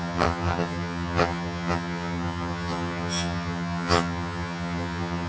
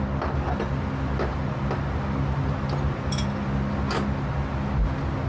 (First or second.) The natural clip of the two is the second